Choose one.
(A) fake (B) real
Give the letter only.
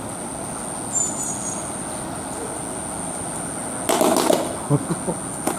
B